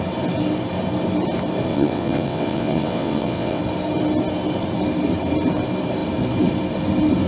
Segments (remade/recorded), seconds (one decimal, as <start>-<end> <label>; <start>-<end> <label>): 0.0-1.7 recorded; 1.7-3.6 remade; 3.6-7.3 recorded